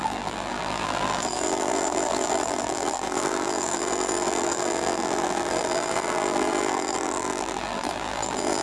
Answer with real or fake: fake